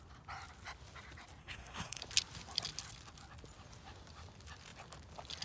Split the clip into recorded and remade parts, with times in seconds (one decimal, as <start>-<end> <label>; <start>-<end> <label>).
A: 0.0-1.4 recorded; 1.4-2.0 remade; 2.0-5.4 recorded